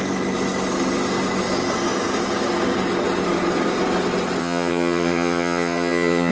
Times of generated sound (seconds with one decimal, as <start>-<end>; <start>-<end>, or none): 4.4-6.3